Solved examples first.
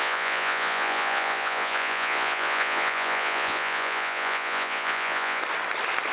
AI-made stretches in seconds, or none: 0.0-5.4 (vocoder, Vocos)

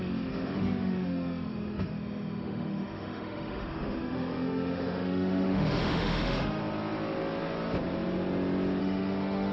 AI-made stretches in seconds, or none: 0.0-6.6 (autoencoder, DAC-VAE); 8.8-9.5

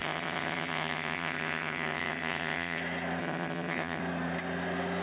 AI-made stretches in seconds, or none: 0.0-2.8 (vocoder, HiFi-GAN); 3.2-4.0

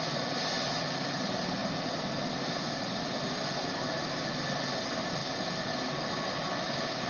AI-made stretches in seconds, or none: none

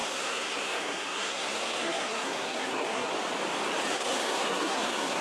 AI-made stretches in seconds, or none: 0.0-3.1 (codec, SNAC); 3.9-5.2

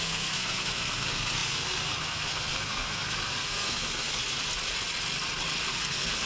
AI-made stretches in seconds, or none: 0.0-4.2 (codec, SNAC); 5.7-6.3